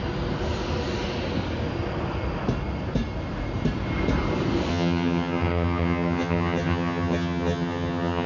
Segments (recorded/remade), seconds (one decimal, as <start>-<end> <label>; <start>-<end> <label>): 0.0-4.7 recorded; 4.7-8.3 remade

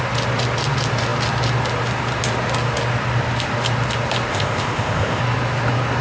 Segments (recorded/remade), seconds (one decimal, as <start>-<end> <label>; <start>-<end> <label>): 0.0-4.3 recorded; 4.3-5.2 remade; 5.2-6.0 recorded